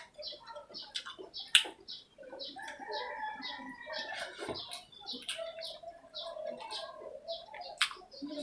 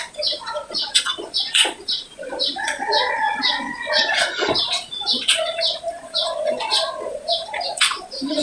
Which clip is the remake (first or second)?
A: second